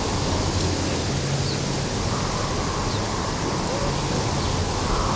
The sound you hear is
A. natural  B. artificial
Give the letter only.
A